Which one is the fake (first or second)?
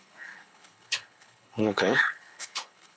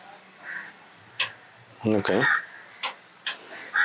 first